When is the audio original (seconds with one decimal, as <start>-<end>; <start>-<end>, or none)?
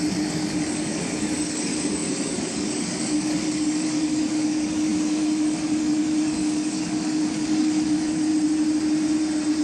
8.3-9.6